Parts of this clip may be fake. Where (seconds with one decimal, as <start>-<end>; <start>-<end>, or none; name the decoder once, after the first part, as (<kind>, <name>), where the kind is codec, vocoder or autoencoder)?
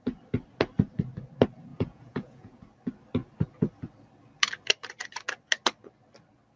1.7-2.6 (vocoder, Vocos)